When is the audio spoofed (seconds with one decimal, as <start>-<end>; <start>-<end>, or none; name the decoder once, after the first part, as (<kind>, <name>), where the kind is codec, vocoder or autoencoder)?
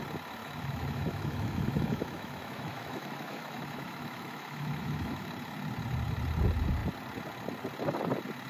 0.4-5.3 (autoencoder, DAC-VAE)